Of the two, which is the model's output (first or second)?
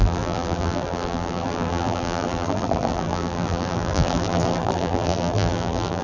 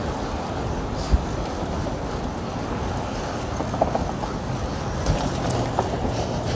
first